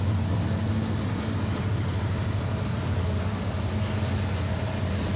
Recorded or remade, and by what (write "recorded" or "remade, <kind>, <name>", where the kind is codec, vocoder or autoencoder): recorded